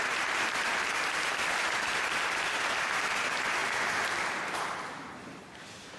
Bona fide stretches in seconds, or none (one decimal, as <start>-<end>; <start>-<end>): none